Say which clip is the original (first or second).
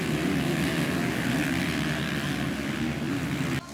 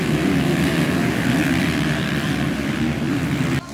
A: first